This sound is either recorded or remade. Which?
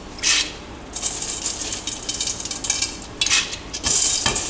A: recorded